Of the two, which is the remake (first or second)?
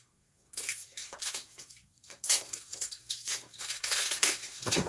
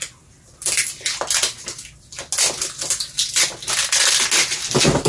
first